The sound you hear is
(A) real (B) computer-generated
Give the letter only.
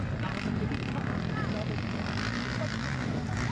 A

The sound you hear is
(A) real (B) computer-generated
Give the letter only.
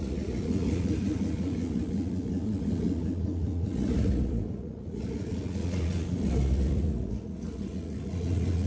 B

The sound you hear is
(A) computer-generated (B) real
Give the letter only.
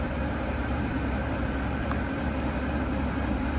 A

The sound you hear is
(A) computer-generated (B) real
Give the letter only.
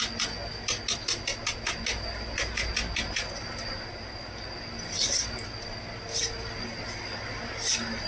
B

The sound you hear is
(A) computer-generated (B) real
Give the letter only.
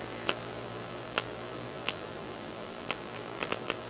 A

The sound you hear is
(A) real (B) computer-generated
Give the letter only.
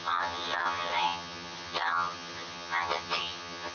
B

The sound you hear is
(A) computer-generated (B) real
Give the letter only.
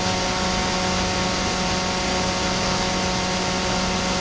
B